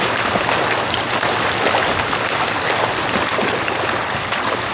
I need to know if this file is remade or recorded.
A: recorded